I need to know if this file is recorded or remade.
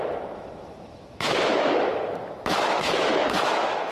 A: remade